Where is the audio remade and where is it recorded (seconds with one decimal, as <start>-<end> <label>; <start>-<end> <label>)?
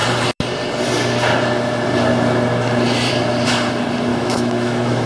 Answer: 0.0-4.1 recorded; 4.1-5.1 remade